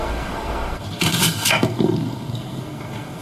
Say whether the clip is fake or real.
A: fake